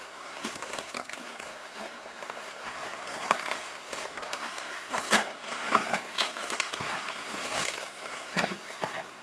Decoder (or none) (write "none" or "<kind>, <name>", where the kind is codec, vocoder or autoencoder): codec, SNAC